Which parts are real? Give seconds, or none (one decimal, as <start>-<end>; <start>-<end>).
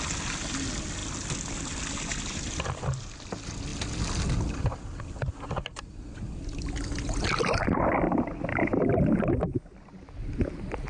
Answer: 0.0-10.9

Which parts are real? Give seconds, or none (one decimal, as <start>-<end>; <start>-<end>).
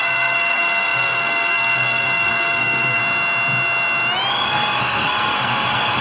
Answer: 3.0-4.3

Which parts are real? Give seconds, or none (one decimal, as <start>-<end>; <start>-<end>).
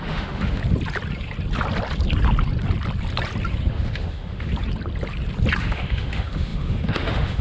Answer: 0.6-3.7; 4.5-5.6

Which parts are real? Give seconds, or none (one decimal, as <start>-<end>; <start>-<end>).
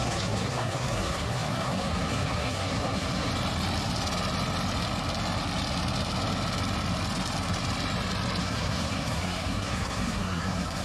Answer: 3.3-8.4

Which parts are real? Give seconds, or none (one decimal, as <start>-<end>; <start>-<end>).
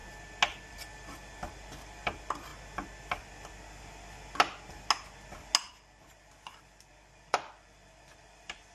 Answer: 0.0-0.7; 2.5-6.9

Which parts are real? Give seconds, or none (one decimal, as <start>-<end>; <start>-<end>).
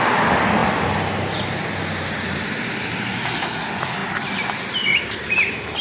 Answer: 0.0-5.8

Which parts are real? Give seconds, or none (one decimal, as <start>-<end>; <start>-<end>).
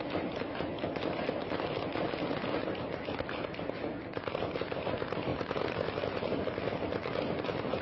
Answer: 0.0-7.8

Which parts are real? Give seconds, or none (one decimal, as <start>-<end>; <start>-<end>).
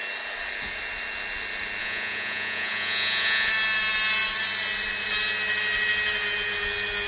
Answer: 0.0-1.8; 3.5-7.1